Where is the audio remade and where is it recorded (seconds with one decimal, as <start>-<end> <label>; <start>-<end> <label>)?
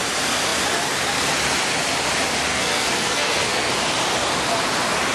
0.0-2.5 recorded; 2.5-3.7 remade; 3.7-5.1 recorded